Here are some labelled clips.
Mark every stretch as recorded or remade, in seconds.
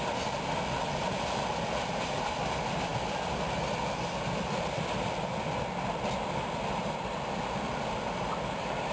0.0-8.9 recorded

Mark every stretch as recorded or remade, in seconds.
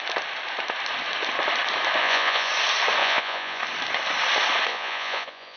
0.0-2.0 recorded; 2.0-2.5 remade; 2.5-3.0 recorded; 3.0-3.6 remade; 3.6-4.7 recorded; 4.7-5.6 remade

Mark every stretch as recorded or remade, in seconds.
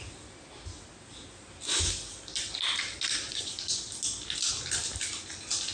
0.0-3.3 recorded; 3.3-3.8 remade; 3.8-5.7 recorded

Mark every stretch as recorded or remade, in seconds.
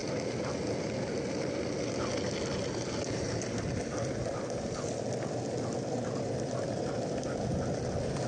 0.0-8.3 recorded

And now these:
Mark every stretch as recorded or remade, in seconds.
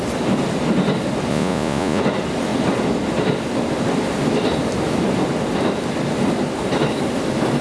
0.0-1.3 recorded; 1.3-2.0 remade; 2.0-7.6 recorded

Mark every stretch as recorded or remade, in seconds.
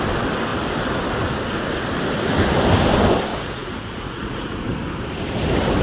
0.0-3.3 recorded; 3.3-4.6 remade; 4.6-5.8 recorded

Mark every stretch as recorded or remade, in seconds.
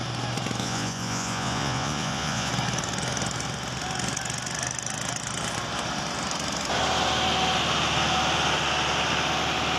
0.0-0.6 recorded; 0.6-2.5 remade; 2.5-9.8 recorded